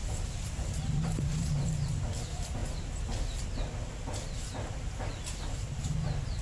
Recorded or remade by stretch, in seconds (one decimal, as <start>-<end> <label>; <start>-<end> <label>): 0.0-0.6 remade; 0.6-6.4 recorded